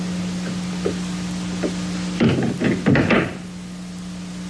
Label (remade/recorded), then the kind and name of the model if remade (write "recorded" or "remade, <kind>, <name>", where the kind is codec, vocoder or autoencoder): recorded